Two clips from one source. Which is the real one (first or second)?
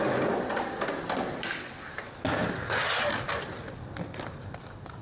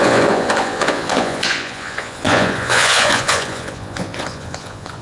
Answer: first